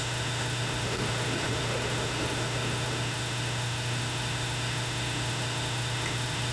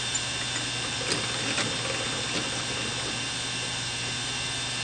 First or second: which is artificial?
first